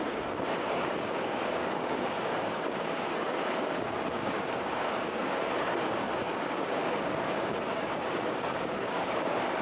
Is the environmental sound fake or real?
fake